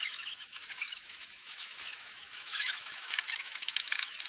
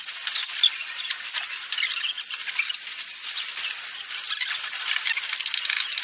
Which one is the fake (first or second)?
first